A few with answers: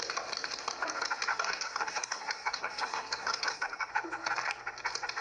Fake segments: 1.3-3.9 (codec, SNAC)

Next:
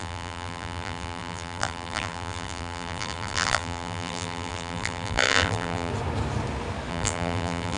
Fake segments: 0.0-5.9 (vocoder, BigVGAN v2); 6.9-7.8

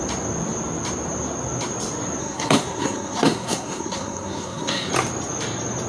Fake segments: 2.2-4.9 (codec, SNAC)

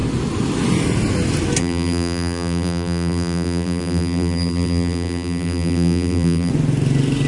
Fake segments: 1.6-6.5 (vocoder, BigVGAN v2)

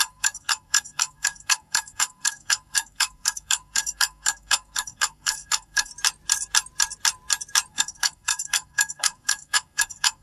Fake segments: 0.0-5.9 (codec, SNAC); 7.7-10.2

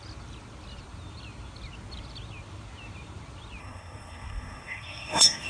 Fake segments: 3.6-5.5 (codec, SNAC)